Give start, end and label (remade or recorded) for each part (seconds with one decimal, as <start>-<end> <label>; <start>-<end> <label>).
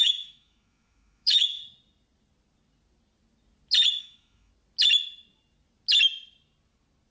0.0-1.6 remade; 1.6-4.0 recorded; 4.0-4.5 remade; 4.5-7.1 recorded